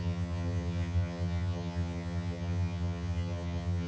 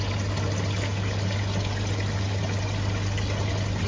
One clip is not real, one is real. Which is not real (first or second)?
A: first